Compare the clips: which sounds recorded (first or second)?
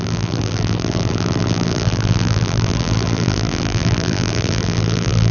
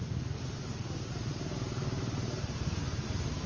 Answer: second